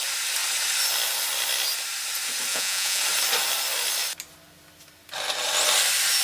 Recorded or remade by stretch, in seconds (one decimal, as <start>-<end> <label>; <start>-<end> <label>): 0.0-2.5 recorded; 2.5-3.0 remade; 3.0-6.2 recorded